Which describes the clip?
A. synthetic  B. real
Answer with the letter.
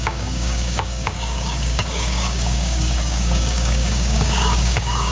A